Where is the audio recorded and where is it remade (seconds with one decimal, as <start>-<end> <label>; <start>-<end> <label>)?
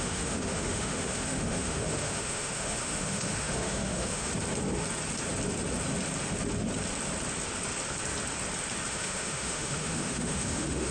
0.0-4.3 remade; 4.3-8.9 recorded; 8.9-10.9 remade